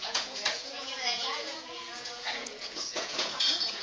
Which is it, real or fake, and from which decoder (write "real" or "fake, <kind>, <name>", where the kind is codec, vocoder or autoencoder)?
fake, vocoder, Vocos